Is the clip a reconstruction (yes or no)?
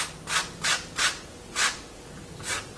no